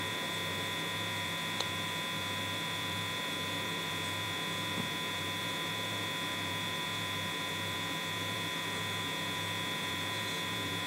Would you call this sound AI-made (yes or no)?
yes